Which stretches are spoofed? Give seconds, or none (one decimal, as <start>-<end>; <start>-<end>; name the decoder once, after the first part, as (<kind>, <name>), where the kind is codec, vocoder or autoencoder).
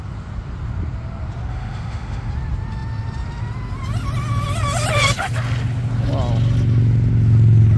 1.5-2.3 (autoencoder, DAC-VAE)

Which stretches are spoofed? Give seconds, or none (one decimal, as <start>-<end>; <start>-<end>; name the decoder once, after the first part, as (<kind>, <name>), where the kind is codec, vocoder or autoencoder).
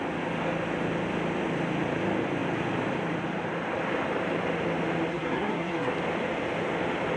5.1-5.9 (codec, SNAC)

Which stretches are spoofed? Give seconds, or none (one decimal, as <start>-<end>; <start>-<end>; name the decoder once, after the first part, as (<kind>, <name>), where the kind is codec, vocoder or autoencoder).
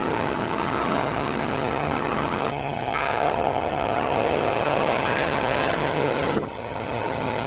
0.0-7.5 (vocoder, HiFi-GAN)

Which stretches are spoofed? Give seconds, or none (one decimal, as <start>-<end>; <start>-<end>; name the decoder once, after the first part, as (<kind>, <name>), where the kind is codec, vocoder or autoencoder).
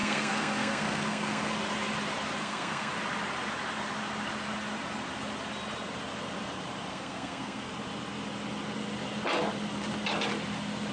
0.0-1.5 (codec, SNAC); 2.4-2.9; 6.9-7.7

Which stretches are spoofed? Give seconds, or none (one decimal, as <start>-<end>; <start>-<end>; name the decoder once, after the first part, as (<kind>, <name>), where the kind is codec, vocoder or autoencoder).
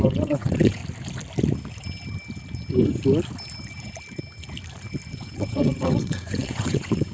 0.0-0.8 (vocoder, WaveNeXt); 5.1-7.1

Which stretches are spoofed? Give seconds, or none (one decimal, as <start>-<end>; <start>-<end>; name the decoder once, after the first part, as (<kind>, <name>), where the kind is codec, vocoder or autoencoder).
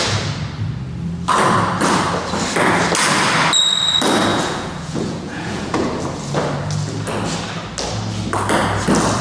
4.3-5.9 (vocoder, Vocos)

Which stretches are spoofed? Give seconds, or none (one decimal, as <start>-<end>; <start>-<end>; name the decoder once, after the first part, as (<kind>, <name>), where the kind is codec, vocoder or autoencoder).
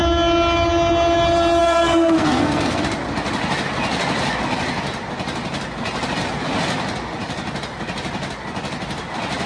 1.6-2.8 (codec, SNAC)